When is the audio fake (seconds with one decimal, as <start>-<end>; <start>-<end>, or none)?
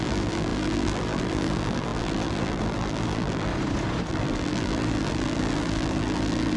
0.0-3.5; 4.1-6.6